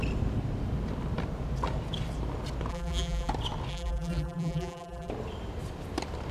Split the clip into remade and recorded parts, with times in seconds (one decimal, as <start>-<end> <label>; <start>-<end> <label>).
0.0-2.7 recorded; 2.7-3.3 remade; 3.3-3.7 recorded; 3.7-5.1 remade; 5.1-6.3 recorded